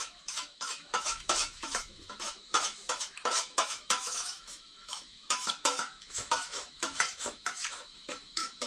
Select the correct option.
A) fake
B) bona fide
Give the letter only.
A